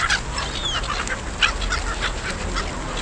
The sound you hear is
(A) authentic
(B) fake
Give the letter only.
A